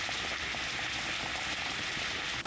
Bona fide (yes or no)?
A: yes